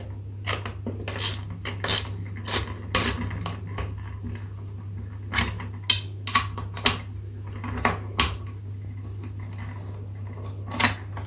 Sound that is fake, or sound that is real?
real